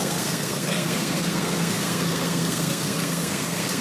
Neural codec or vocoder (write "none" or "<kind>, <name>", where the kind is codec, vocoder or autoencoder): codec, SNAC